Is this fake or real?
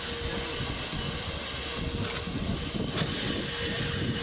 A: real